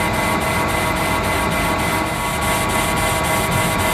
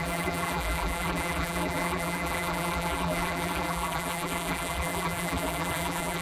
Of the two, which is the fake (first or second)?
second